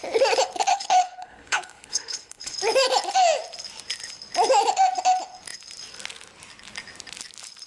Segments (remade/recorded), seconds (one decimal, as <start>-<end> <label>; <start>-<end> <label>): 0.0-0.7 recorded; 0.7-2.6 remade; 2.6-7.7 recorded